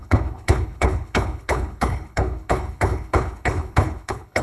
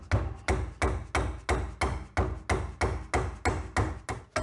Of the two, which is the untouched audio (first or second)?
second